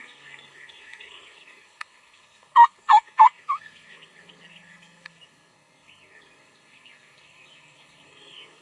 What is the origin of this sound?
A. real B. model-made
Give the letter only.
B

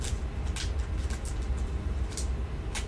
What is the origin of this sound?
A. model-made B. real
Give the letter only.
B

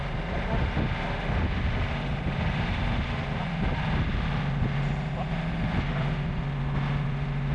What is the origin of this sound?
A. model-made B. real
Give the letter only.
B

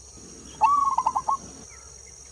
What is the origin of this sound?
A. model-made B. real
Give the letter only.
B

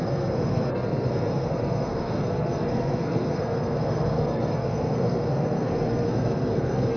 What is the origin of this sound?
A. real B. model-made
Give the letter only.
B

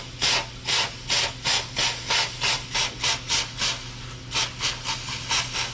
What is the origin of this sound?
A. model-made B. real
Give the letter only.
B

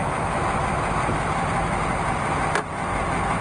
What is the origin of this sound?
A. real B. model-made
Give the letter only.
A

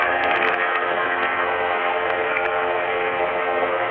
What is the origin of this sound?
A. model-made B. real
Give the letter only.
A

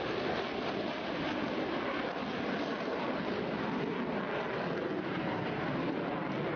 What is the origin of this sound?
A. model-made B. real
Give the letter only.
B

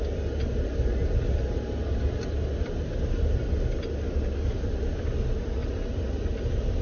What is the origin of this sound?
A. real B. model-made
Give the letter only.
A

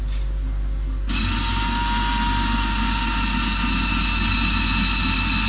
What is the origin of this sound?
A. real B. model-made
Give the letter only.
A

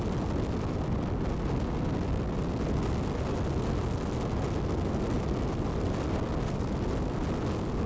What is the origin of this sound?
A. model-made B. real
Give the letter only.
B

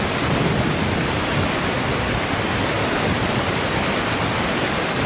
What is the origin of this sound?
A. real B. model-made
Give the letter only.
A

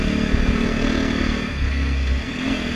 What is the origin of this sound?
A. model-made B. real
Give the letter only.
A